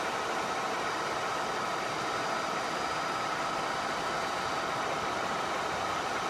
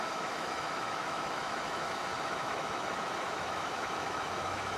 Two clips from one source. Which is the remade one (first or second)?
second